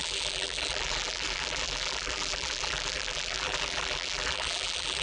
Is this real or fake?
fake